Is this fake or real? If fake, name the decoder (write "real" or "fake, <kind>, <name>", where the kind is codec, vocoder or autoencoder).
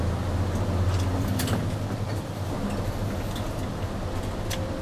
real